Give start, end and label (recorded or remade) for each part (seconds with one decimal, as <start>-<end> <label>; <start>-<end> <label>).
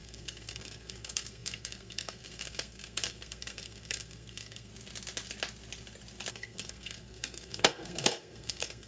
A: 0.0-4.7 remade; 4.7-6.3 recorded; 6.3-8.9 remade